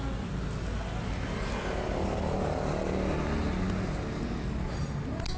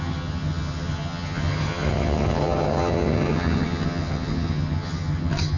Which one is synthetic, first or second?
second